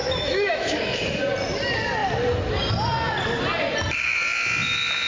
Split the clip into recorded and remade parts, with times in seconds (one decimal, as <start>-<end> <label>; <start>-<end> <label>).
0.0-1.2 remade; 1.2-5.1 recorded